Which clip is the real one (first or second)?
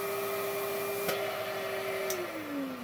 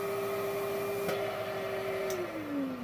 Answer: first